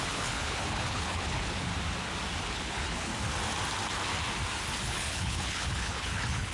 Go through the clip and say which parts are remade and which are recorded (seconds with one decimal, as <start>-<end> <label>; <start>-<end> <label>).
0.0-1.7 remade; 1.7-2.4 recorded; 2.4-3.1 remade; 3.1-4.8 recorded; 4.8-6.5 remade